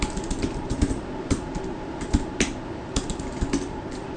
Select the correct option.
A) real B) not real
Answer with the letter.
A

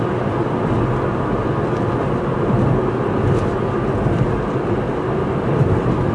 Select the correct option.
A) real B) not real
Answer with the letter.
A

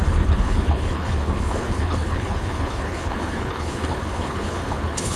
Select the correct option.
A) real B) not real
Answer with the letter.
B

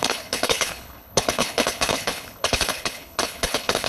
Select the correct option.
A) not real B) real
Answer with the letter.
A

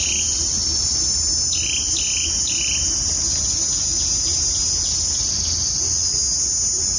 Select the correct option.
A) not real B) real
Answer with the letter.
B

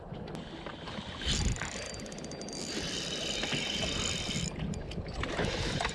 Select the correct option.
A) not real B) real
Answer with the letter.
B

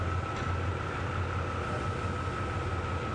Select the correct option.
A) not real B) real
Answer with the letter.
B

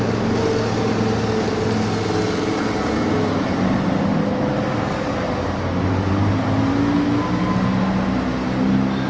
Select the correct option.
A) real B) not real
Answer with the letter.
A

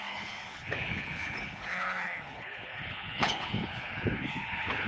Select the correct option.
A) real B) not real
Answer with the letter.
B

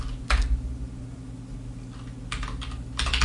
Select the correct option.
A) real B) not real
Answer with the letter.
A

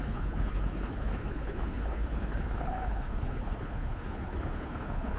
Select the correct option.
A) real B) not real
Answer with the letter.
B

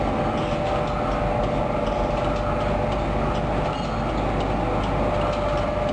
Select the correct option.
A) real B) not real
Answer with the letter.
A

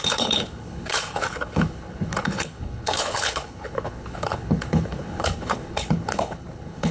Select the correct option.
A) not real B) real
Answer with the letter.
A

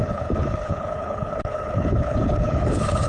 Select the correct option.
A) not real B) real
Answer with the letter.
A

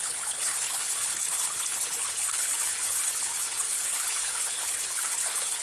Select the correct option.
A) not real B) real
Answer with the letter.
A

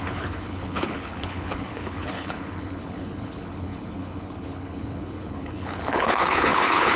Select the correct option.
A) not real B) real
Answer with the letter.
A